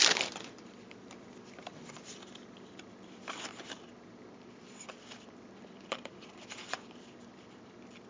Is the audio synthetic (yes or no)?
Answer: yes